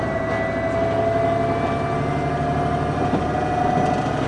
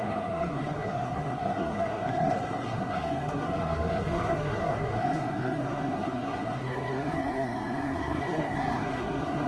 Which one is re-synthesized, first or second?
second